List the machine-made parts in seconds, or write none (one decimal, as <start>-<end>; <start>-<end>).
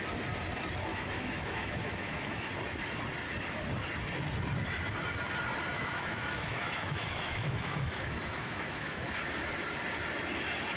0.9-2.5; 5.7-9.2